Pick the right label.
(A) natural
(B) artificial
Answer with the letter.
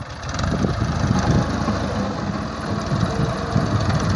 A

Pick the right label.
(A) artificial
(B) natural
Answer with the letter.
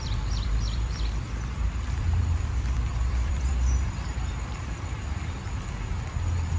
A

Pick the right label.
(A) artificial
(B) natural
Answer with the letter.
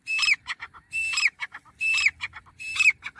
A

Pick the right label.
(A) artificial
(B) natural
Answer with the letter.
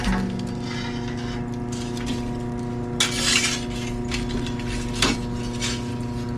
B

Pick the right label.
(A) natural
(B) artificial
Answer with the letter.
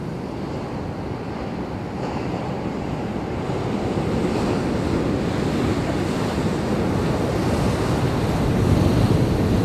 A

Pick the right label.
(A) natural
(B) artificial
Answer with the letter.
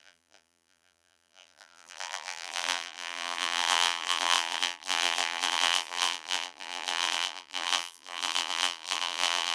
B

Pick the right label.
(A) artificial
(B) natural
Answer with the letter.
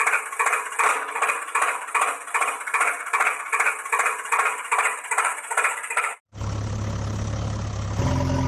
B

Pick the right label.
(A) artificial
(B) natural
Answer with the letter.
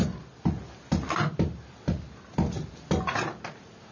B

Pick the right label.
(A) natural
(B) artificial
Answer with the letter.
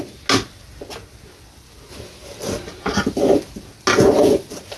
A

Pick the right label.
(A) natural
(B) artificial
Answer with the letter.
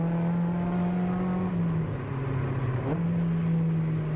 A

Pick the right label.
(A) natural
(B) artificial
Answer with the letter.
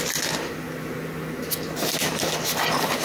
A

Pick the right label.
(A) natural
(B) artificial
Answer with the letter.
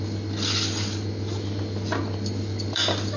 B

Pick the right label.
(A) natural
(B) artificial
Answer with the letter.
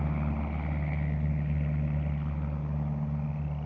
A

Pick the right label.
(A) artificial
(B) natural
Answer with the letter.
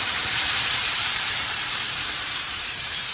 A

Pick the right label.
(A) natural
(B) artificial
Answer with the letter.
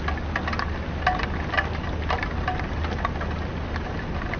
A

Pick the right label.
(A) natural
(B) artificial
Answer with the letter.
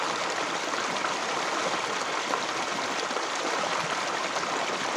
A